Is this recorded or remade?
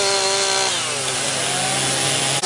recorded